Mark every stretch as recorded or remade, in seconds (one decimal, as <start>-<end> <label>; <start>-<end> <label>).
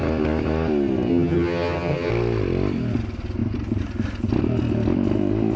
0.0-1.1 recorded; 1.1-2.1 remade; 2.1-5.6 recorded